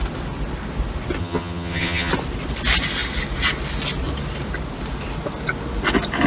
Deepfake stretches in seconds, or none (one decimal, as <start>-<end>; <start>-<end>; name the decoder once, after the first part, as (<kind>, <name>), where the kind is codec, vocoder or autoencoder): 1.2-2.1 (vocoder, HiFi-GAN)